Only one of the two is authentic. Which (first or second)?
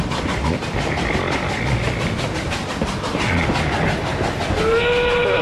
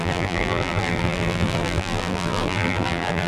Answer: first